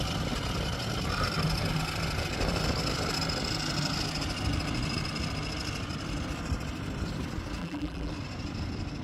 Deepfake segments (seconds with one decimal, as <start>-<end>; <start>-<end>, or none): 7.6-8.1